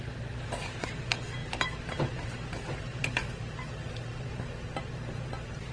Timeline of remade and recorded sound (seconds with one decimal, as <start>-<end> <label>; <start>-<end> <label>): 0.0-1.4 recorded; 1.4-4.8 remade; 4.8-5.7 recorded